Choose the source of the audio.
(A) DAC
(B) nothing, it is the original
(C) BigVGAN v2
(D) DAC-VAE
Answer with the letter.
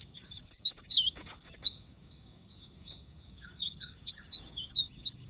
A